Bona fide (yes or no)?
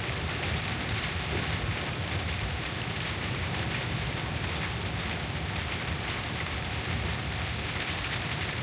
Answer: no